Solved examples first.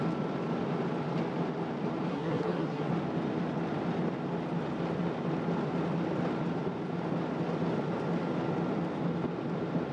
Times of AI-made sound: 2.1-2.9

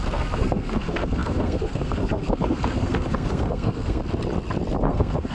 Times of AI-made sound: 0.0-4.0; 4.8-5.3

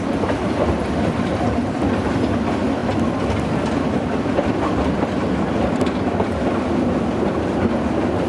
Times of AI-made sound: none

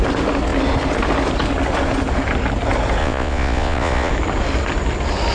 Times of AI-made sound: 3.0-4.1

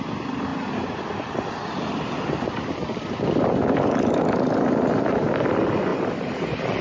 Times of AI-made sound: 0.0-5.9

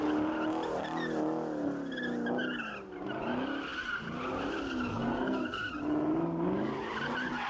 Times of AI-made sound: 4.9-5.7

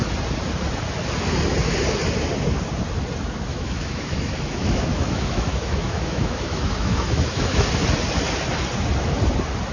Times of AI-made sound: 3.5-7.7

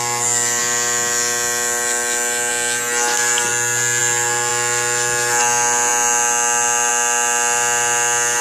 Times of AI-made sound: none